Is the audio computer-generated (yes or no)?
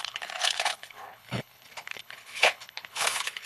yes